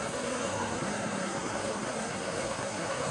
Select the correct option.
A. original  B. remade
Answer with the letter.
B